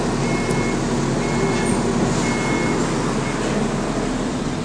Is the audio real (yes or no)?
yes